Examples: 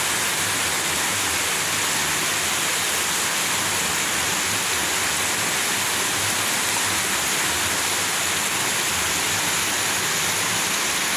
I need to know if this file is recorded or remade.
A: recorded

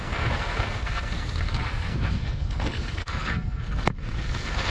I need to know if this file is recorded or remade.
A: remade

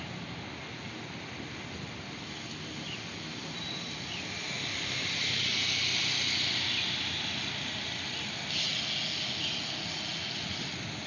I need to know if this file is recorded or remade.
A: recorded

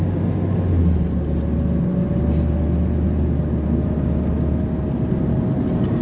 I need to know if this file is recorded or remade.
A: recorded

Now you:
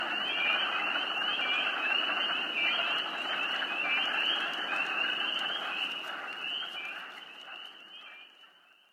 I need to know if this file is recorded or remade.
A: recorded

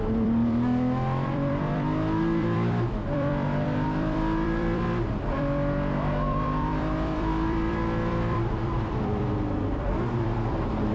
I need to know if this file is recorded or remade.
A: remade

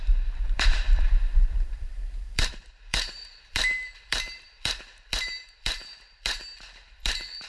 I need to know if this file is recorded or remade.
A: remade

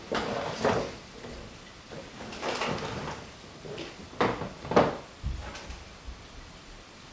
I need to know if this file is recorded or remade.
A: recorded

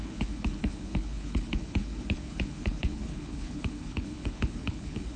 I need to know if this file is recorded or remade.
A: remade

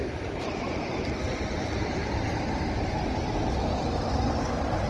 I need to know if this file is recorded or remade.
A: recorded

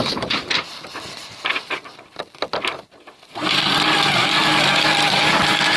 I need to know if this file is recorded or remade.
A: recorded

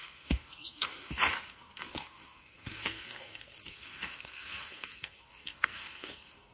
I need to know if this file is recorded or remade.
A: remade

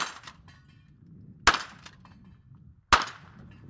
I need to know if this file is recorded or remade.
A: recorded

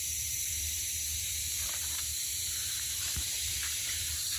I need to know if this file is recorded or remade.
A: remade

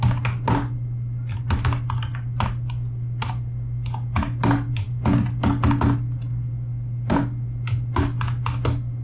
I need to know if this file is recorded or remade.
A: recorded